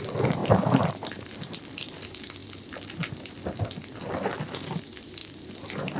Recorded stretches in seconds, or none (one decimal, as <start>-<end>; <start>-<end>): 0.0-0.4; 1.6-5.2